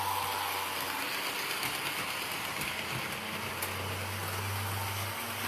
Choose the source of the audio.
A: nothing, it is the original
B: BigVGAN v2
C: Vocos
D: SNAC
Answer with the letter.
A